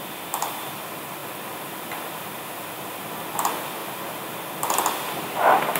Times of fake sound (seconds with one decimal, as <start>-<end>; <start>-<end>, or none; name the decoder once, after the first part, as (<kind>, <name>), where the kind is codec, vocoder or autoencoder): none